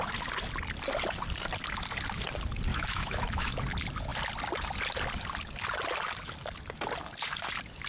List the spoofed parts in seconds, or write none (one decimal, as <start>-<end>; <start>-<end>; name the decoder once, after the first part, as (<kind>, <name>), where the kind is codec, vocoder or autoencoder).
2.7-3.6 (autoencoder, DAC-VAE)